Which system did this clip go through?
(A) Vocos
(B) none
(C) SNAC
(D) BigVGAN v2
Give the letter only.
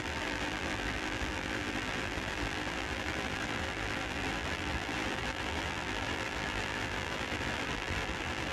D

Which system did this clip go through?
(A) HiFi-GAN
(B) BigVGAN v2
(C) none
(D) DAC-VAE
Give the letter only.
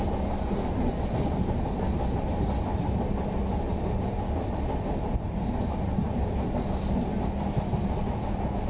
C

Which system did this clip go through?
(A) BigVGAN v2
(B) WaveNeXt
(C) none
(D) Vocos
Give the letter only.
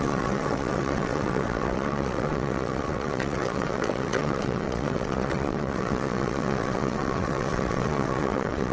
B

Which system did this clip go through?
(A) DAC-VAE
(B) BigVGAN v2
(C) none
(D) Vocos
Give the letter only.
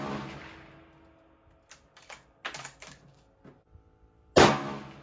C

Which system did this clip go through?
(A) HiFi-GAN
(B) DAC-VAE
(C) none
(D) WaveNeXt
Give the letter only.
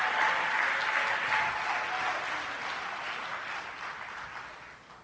C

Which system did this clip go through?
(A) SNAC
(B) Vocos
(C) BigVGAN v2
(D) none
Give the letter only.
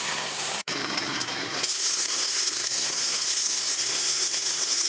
A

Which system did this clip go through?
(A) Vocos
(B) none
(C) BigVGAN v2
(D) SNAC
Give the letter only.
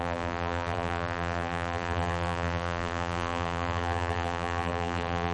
C